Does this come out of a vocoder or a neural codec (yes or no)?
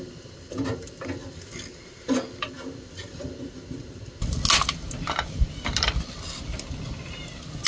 no